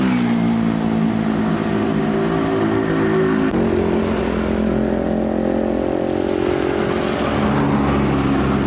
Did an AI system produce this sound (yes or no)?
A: no